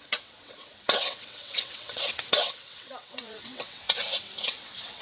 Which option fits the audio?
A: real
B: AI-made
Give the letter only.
B